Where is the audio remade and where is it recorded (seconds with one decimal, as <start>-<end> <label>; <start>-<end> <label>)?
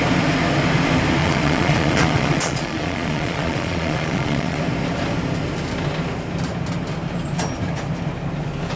0.0-1.2 recorded; 1.2-4.6 remade; 4.6-8.8 recorded